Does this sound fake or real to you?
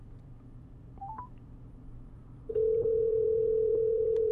fake